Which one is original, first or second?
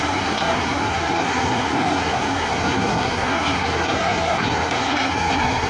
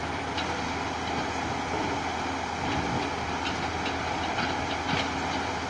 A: second